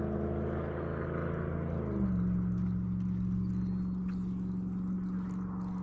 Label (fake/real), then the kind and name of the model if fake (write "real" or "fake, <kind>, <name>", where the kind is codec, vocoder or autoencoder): real